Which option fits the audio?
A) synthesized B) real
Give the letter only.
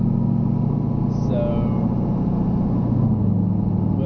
B